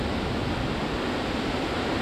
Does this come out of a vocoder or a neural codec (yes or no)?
no